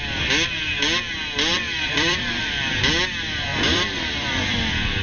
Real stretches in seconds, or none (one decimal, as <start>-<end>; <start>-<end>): 0.0-1.5; 2.8-3.5